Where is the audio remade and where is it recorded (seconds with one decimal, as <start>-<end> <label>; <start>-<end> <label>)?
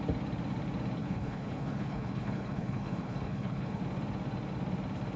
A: 0.0-1.0 recorded; 1.0-3.8 remade; 3.8-5.2 recorded